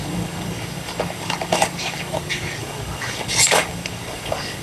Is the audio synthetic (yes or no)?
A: yes